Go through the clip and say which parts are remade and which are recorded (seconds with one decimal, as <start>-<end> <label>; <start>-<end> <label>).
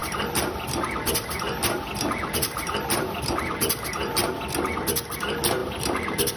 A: 0.0-3.8 remade; 3.8-6.4 recorded